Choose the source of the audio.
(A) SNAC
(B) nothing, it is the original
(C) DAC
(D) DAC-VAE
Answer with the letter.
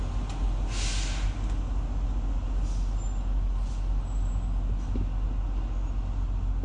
B